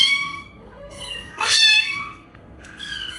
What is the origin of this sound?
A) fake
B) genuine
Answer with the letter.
A